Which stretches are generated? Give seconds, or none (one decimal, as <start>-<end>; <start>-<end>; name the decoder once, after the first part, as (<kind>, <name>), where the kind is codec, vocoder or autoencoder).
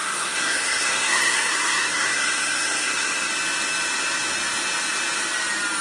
0.0-3.3 (codec, SNAC)